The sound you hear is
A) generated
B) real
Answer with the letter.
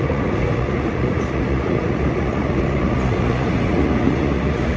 A